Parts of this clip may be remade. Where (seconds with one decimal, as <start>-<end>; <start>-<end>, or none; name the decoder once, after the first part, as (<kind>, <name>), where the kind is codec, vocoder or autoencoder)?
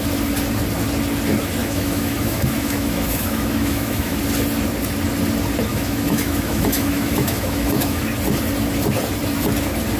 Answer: 1.6-4.2 (autoencoder, DAC-VAE); 5.7-8.0